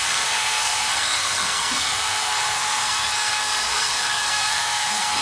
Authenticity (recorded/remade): remade